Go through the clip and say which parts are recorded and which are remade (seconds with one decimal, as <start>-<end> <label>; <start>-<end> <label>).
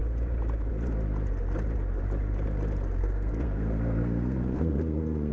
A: 0.0-3.0 recorded; 3.0-5.3 remade